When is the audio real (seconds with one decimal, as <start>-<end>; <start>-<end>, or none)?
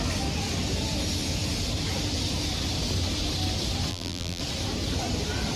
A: 0.0-3.9; 4.4-5.6